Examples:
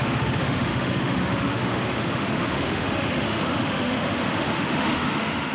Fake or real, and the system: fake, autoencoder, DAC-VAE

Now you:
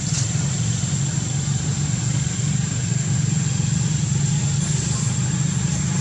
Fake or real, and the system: real